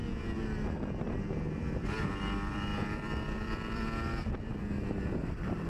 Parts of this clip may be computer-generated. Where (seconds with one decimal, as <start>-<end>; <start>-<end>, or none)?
1.8-5.7